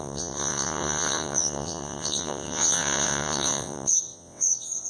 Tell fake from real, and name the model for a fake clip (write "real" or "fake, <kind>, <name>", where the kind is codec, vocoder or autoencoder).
fake, vocoder, WaveNeXt